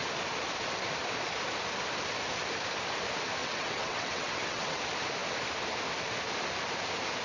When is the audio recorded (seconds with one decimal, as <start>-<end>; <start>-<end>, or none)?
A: 0.0-3.4; 4.8-7.2